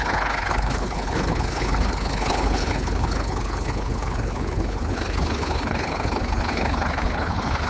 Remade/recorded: remade